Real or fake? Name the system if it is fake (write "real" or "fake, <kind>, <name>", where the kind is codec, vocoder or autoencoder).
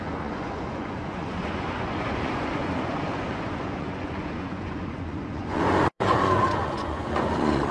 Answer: fake, vocoder, Vocos